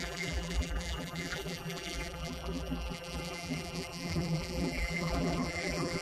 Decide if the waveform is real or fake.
fake